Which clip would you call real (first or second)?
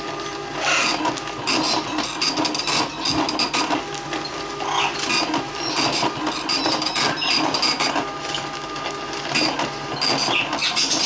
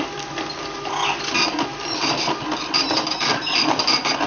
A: first